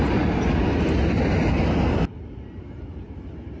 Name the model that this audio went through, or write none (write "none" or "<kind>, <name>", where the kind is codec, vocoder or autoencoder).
none